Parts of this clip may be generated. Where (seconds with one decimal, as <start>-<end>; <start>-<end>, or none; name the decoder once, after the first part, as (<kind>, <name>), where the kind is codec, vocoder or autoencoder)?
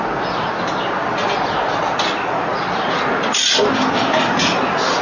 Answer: none